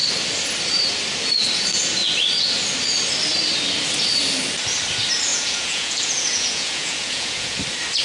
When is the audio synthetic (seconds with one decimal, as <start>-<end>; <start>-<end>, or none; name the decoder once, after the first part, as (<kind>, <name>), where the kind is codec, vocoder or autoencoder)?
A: 5.3-7.6 (vocoder, Vocos)